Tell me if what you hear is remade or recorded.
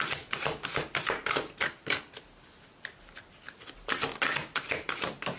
recorded